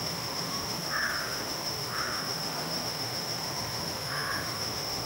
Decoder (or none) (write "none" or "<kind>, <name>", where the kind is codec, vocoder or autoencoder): autoencoder, DAC-VAE